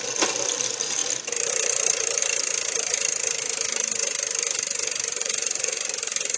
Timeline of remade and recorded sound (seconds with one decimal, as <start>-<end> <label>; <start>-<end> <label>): 0.0-5.2 recorded; 5.2-5.8 remade; 5.8-6.4 recorded